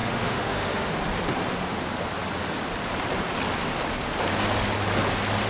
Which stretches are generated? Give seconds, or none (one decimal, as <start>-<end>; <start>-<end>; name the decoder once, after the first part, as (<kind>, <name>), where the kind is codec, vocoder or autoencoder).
0.0-0.9 (autoencoder, DAC-VAE)